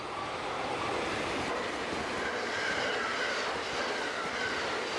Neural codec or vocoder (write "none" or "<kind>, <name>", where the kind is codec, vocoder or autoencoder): none